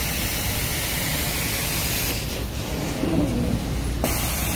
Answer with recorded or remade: recorded